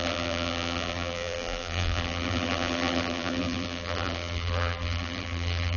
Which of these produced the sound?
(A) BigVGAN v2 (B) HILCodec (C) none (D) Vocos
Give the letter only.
A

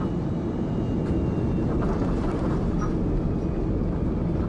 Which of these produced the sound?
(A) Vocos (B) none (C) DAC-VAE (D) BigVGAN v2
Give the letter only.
B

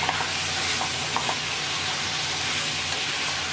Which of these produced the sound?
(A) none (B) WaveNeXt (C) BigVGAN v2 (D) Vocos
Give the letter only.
A